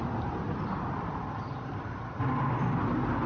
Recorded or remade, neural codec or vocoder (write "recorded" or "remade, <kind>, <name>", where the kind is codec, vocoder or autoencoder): recorded